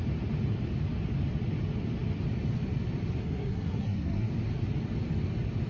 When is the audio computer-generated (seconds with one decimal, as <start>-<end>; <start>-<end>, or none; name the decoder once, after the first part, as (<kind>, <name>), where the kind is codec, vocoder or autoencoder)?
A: 3.2-4.3 (codec, SNAC)